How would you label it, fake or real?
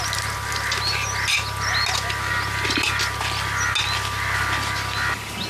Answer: real